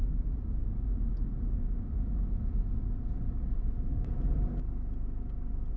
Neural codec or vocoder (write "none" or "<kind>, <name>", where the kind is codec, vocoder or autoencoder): none